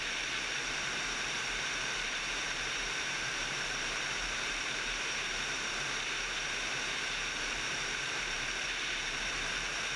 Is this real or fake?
fake